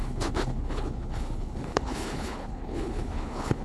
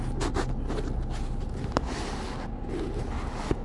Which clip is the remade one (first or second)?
first